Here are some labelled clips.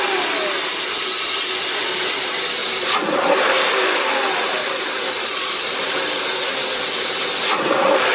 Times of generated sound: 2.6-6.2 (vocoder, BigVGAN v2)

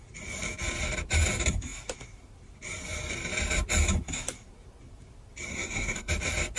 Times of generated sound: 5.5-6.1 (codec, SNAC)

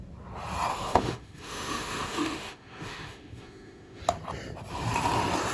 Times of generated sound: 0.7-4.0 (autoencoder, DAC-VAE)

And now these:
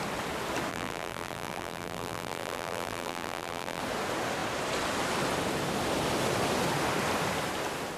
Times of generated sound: 0.7-3.8 (vocoder, BigVGAN v2)

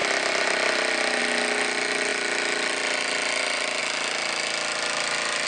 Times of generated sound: 0.0-1.2 (vocoder, BigVGAN v2); 2.1-3.8

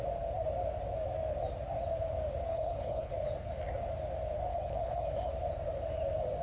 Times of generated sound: 2.5-3.1 (codec, HILCodec); 4.5-5.3